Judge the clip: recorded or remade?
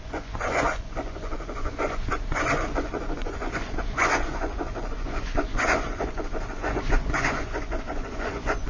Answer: remade